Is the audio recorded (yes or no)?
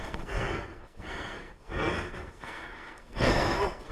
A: no